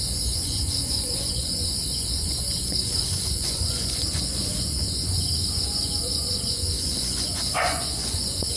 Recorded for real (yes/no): no